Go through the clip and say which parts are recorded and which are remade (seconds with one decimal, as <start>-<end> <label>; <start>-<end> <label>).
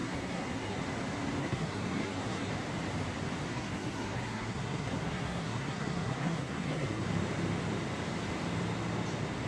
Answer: 0.0-0.8 remade; 0.8-1.4 recorded; 1.4-2.5 remade; 2.5-3.5 recorded; 3.5-7.1 remade; 7.1-9.5 recorded